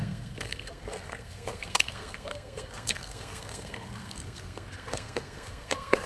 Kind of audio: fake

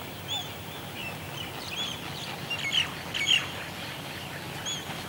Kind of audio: real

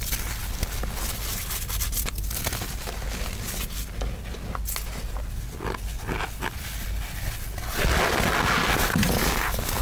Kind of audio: real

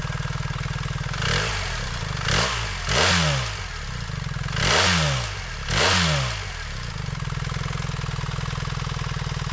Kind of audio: real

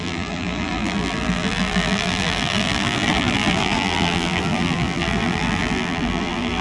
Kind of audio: fake